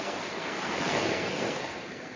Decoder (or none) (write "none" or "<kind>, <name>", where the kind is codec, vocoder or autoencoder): codec, SNAC